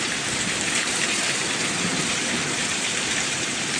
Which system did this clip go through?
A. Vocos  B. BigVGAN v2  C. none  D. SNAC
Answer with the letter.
B